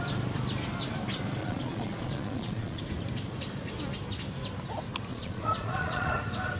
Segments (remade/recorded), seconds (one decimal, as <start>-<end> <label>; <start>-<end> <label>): 0.0-1.4 recorded; 1.4-2.8 remade; 2.8-5.1 recorded; 5.1-6.1 remade; 6.1-6.6 recorded